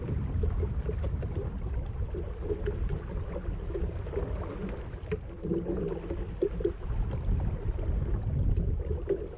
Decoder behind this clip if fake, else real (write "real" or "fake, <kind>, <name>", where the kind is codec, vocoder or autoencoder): real